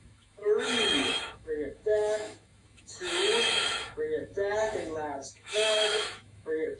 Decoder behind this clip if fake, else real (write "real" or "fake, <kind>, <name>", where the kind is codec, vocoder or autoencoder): fake, autoencoder, DAC-VAE